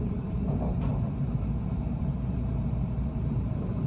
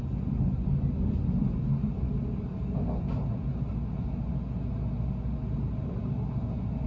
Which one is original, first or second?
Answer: second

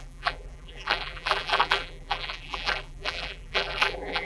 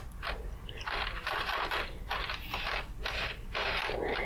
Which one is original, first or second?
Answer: second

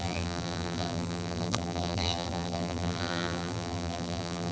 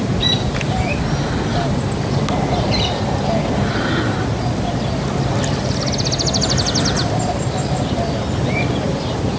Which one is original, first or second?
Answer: second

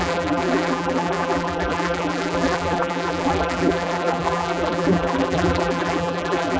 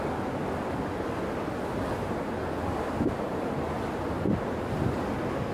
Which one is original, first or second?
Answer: second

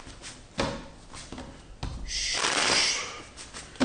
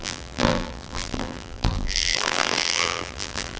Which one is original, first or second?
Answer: first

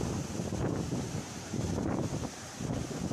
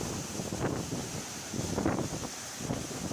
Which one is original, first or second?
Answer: second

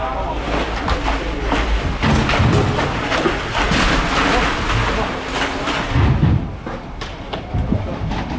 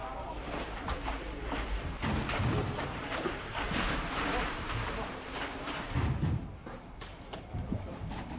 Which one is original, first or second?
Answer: first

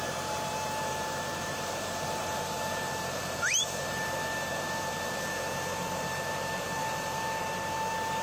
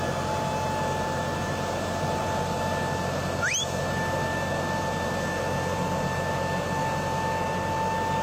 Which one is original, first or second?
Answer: second